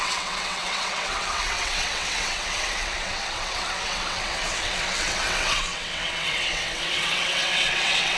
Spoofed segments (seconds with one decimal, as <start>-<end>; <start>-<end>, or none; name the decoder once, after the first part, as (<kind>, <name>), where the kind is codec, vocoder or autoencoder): 0.0-8.2 (vocoder, WaveNeXt)